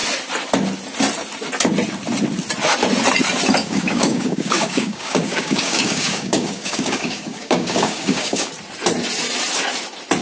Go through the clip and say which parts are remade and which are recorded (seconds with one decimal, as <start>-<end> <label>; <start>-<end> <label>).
0.0-3.6 recorded; 3.6-8.5 remade; 8.5-10.2 recorded